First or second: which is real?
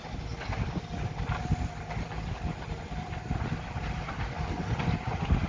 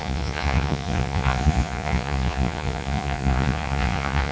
first